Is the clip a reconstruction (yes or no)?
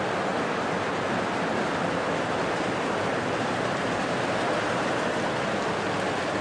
no